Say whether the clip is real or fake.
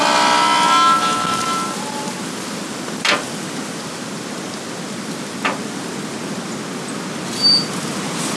real